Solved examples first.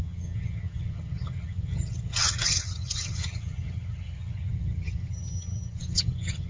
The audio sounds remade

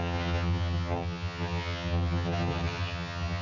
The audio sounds remade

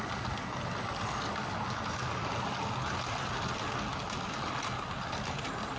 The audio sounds recorded